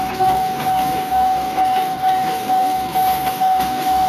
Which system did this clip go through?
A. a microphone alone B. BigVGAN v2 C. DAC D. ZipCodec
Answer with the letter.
C